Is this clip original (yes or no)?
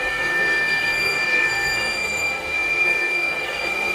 no